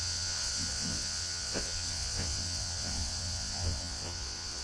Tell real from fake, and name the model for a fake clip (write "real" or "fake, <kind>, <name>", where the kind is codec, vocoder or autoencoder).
fake, vocoder, WaveNeXt